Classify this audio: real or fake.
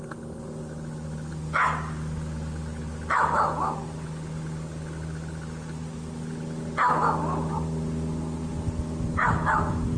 real